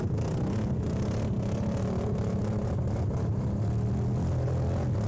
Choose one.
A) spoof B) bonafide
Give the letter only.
B